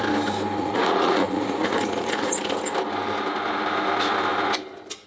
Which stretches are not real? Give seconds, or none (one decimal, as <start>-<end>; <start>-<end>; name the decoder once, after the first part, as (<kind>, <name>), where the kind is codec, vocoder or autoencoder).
0.6-2.4 (vocoder, Vocos)